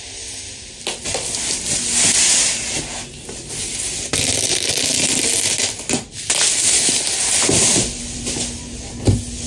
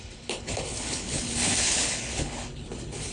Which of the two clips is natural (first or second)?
first